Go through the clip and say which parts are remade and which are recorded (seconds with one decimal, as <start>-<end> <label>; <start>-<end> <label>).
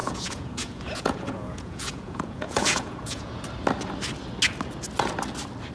0.0-3.4 remade; 3.4-5.7 recorded